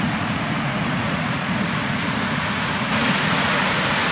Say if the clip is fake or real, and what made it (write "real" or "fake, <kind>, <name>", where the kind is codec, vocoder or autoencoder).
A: fake, vocoder, Vocos